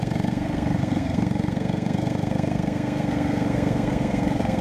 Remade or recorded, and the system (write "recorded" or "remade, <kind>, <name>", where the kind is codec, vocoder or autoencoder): remade, codec, SNAC